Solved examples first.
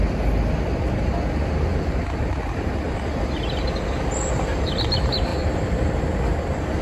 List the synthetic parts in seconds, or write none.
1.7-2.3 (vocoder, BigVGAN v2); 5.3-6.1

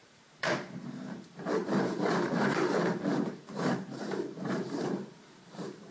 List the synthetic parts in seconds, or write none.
0.0-5.9 (vocoder, BigVGAN v2)

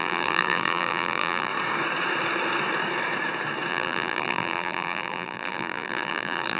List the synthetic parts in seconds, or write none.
0.0-1.5 (vocoder, BigVGAN v2); 3.7-6.6

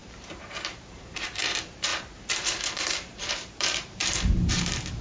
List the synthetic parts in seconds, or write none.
0.0-5.0 (vocoder, BigVGAN v2)

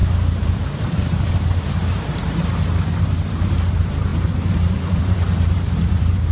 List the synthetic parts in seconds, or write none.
0.0-6.3 (vocoder, BigVGAN v2)

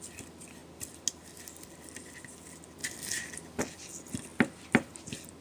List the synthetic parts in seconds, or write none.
4.3-5.0 (vocoder, BigVGAN v2)

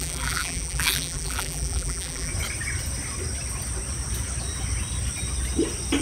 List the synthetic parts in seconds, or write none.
0.0-2.3 (vocoder, BigVGAN v2)